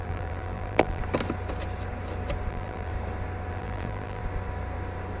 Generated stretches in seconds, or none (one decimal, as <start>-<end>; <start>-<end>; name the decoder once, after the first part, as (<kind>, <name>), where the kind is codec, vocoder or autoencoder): 0.0-1.0 (vocoder, BigVGAN v2); 2.5-2.9; 3.5-4.2